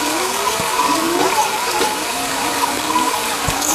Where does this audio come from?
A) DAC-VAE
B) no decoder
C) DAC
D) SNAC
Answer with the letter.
C